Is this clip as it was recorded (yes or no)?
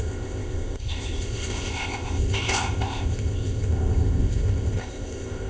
no